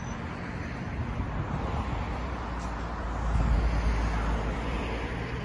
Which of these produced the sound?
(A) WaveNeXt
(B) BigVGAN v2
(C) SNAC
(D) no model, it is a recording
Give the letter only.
D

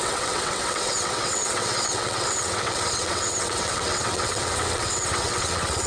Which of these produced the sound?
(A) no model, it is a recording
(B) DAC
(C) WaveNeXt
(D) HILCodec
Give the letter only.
C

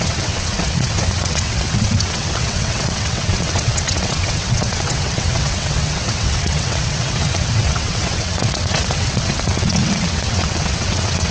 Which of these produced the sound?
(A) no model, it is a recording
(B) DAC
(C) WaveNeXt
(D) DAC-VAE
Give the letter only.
C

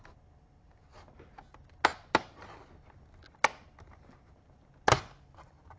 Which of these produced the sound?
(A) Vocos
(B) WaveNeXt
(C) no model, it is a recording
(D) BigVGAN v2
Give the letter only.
C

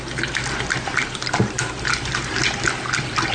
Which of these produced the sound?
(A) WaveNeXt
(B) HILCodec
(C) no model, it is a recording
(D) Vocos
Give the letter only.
C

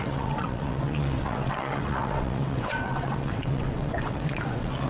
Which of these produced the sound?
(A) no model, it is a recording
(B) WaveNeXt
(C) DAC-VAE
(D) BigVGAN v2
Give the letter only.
B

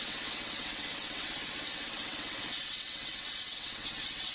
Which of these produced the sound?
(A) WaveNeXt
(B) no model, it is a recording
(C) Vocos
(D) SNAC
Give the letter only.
A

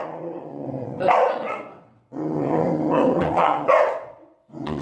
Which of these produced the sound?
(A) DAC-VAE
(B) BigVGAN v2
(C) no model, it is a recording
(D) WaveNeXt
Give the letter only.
D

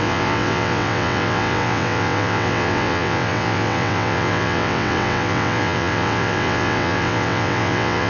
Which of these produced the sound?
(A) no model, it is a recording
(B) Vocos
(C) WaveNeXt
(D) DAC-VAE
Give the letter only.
C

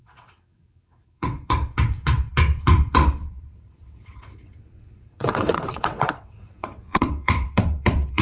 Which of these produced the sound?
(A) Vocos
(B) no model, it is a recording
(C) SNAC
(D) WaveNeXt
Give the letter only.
D